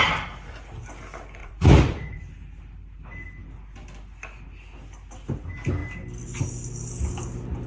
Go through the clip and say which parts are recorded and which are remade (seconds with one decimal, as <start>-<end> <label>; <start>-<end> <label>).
0.0-1.4 recorded; 1.4-2.2 remade; 2.2-7.7 recorded